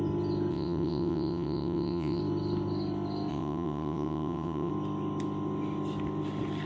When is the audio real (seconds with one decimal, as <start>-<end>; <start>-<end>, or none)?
0.0-0.5; 2.2-3.3; 4.7-6.7